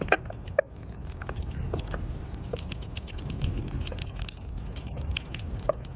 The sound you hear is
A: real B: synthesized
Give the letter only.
A